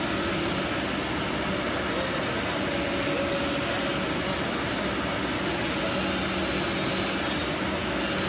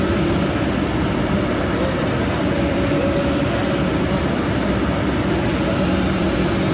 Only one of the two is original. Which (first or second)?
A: first